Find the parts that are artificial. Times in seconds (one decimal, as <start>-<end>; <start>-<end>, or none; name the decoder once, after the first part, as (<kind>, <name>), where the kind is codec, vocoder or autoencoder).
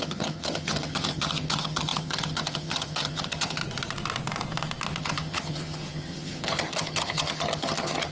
0.0-3.6 (vocoder, HiFi-GAN); 5.0-8.1